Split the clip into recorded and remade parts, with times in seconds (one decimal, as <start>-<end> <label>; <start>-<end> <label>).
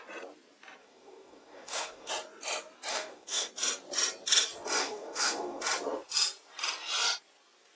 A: 0.0-0.8 recorded; 0.8-2.1 remade; 2.1-2.9 recorded; 2.9-3.5 remade; 3.5-4.8 recorded; 4.8-5.6 remade; 5.6-7.8 recorded